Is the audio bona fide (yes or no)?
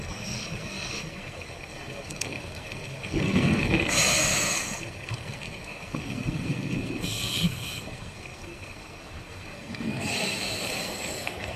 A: no